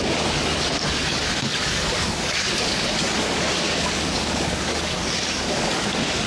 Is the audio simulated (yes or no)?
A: yes